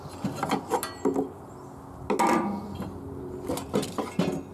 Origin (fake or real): real